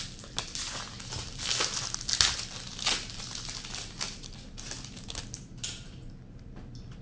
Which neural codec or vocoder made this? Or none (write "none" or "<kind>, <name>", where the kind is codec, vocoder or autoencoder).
none